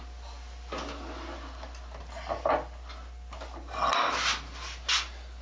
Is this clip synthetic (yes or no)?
no